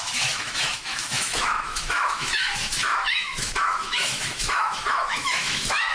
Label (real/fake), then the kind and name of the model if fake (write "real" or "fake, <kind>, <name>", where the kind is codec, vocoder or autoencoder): fake, autoencoder, DAC-VAE